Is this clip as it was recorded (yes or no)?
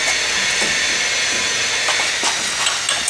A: yes